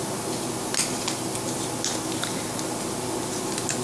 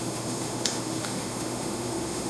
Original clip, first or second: first